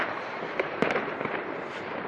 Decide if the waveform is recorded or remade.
remade